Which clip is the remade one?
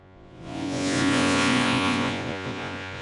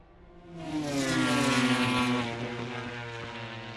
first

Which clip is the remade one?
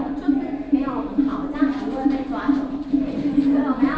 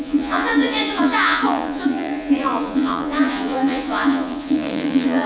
second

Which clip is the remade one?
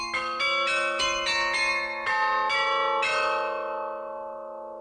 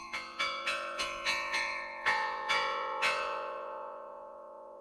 second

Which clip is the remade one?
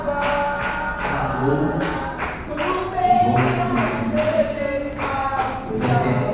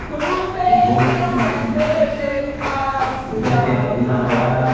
second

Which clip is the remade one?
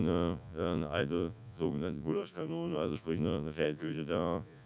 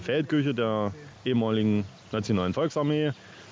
first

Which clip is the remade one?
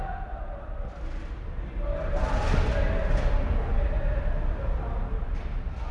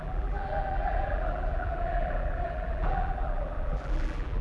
second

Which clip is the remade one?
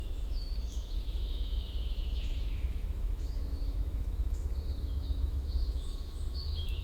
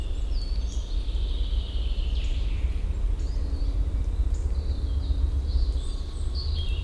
first